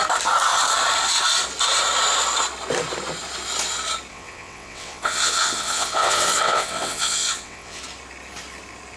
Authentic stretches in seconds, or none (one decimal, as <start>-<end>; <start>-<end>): 0.0-4.1; 7.8-9.0